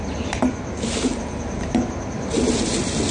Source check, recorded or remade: recorded